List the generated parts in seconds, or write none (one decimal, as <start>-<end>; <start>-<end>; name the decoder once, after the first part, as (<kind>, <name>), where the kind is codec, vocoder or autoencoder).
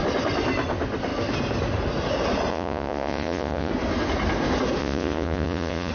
2.5-3.7 (vocoder, Vocos); 4.8-5.9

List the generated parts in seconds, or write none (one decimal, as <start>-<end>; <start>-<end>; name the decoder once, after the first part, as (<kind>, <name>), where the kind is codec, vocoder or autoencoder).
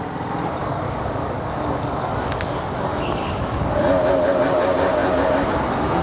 0.6-3.8 (codec, DAC)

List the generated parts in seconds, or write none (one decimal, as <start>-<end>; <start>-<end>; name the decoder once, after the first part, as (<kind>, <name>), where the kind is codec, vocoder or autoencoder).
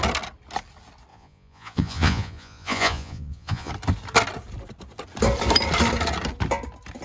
1.1-3.7 (vocoder, Vocos)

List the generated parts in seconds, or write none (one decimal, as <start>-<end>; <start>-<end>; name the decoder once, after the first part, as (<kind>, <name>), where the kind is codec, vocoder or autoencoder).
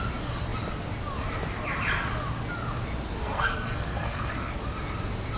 3.2-4.5 (codec, SNAC)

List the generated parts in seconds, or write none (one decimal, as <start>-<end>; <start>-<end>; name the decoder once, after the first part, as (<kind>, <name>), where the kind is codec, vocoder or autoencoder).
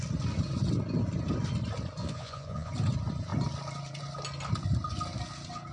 2.0-2.7 (vocoder, Vocos)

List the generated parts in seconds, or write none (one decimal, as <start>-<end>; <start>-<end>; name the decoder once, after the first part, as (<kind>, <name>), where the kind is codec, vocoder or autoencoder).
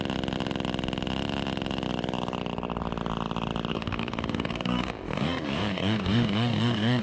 3.7-7.0 (codec, DAC)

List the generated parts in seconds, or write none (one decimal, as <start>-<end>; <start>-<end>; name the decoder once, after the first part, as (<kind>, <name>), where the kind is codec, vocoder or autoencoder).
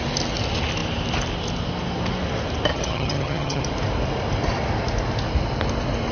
2.7-3.6 (vocoder, HiFi-GAN)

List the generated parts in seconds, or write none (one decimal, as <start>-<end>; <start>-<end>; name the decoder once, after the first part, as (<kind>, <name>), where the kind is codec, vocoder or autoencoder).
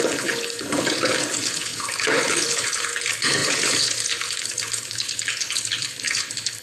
0.0-6.6 (codec, HILCodec)